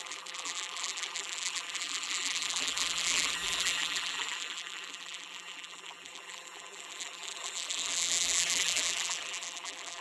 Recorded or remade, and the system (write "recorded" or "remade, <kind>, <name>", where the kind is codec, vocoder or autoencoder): remade, vocoder, BigVGAN v2